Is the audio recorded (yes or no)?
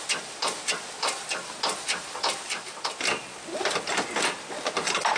yes